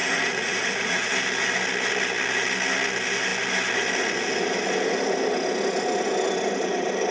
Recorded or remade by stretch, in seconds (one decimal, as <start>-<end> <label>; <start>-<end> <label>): 0.0-1.1 remade; 1.1-7.1 recorded